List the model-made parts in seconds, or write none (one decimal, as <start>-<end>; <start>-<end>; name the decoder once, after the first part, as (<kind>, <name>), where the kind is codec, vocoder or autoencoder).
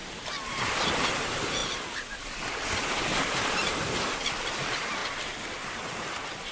none